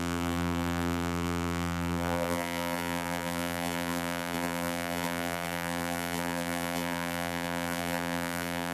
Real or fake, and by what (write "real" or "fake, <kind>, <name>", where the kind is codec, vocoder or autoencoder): fake, vocoder, BigVGAN v2